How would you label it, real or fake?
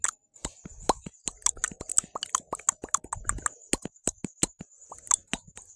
real